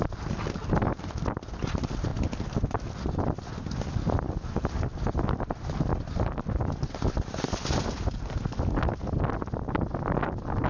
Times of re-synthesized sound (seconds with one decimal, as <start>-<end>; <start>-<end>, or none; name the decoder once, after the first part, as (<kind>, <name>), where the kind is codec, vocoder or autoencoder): none